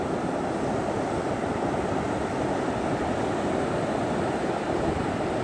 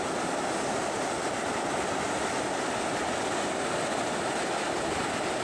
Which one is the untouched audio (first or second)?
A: second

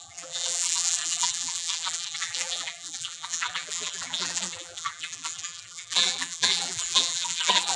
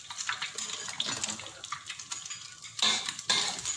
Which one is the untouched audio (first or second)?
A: second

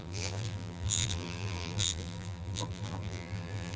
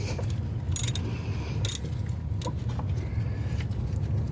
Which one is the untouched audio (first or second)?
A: second